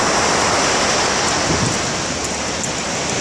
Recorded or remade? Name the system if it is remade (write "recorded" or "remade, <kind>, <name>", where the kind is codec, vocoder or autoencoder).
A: recorded